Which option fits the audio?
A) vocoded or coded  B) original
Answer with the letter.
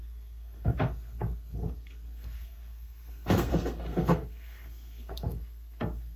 A